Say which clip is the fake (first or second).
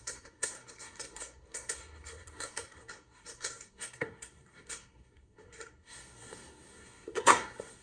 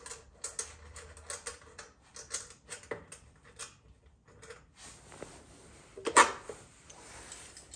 first